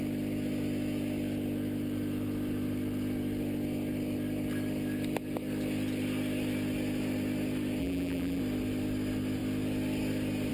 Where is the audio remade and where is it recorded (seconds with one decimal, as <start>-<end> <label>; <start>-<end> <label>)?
0.0-7.8 recorded; 7.8-8.4 remade; 8.4-10.5 recorded